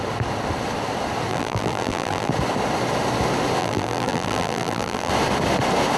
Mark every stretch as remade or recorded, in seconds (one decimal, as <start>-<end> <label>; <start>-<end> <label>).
0.0-1.3 recorded; 1.3-2.3 remade; 2.3-3.6 recorded; 3.6-5.1 remade; 5.1-6.0 recorded